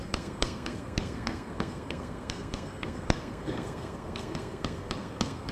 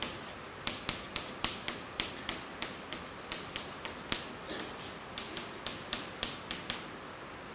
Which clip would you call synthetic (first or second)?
first